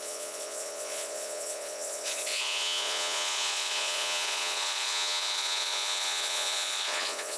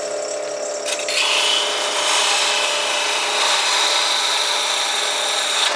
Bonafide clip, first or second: second